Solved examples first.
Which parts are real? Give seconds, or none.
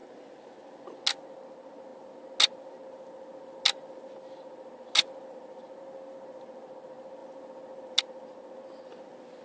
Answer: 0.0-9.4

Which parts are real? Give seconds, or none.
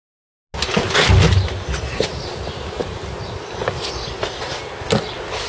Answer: 0.0-5.5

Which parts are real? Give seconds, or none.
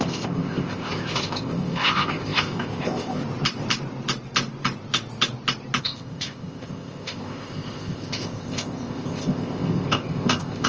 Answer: 3.2-5.8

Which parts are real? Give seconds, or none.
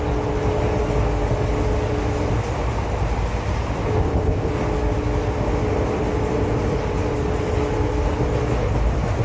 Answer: 0.0-4.0; 4.5-9.2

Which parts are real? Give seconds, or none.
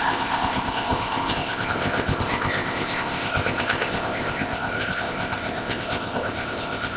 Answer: none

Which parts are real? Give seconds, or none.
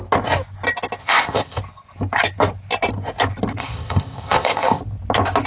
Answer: 0.0-1.0; 1.6-3.6; 4.8-5.5